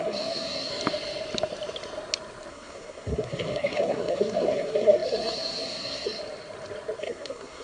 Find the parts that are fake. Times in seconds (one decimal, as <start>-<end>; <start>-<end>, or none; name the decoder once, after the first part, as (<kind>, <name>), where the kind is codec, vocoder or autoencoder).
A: 0.0-0.7 (codec, SNAC); 2.5-6.2; 7.0-7.6